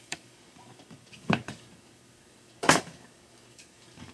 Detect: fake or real fake